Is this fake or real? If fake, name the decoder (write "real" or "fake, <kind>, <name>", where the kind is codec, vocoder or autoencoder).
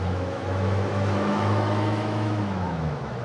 fake, autoencoder, DAC-VAE